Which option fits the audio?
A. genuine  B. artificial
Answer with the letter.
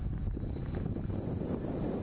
A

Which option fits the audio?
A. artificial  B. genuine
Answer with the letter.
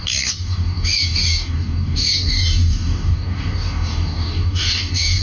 A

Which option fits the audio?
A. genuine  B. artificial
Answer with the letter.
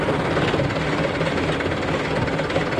A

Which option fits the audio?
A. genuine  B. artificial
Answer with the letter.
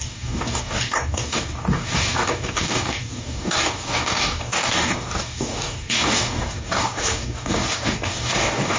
B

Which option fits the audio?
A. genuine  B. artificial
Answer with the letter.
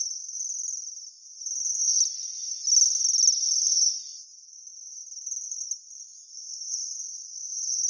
A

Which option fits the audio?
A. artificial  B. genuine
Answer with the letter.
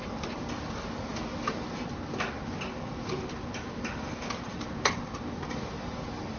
B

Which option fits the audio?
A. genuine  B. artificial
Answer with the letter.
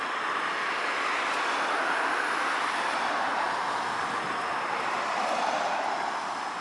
A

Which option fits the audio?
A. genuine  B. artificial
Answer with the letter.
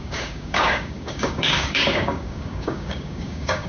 B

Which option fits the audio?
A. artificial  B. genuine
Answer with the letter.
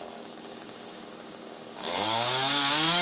A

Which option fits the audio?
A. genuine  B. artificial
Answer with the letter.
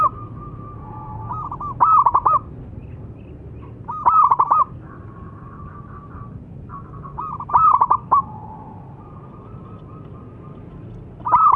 A